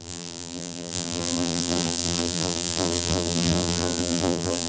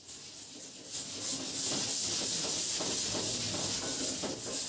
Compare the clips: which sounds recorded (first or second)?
second